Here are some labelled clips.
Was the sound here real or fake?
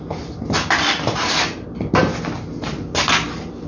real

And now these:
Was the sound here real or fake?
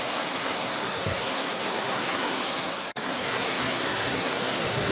fake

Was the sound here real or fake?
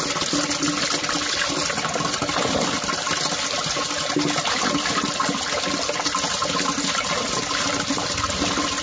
real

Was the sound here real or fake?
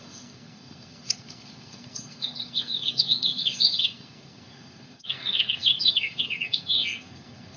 fake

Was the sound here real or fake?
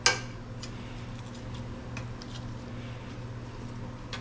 real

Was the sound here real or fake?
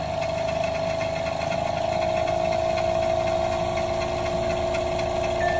real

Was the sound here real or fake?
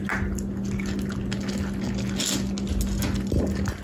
real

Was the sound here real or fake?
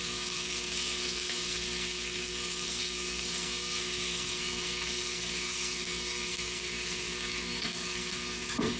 fake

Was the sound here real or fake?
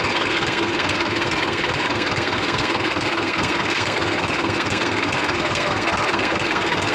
fake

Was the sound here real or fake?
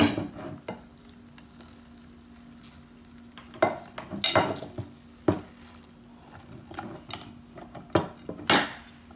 real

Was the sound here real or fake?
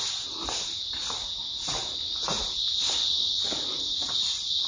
real